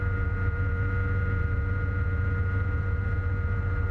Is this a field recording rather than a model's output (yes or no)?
no